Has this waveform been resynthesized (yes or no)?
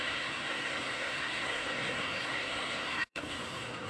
yes